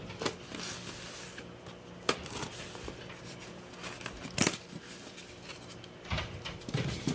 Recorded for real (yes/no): yes